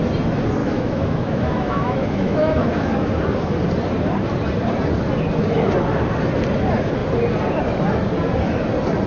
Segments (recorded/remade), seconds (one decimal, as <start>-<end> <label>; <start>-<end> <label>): 0.0-0.6 recorded; 0.6-3.1 remade; 3.1-9.1 recorded